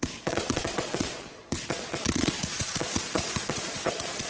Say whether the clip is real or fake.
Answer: fake